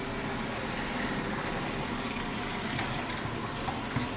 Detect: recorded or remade recorded